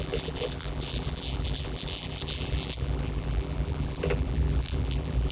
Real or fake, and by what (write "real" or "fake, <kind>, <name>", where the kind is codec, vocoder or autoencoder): fake, vocoder, BigVGAN v2